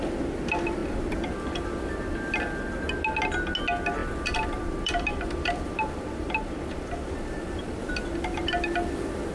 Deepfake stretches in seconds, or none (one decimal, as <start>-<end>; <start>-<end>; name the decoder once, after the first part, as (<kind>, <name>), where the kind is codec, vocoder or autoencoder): 0.8-2.1 (vocoder, BigVGAN v2); 4.0-7.9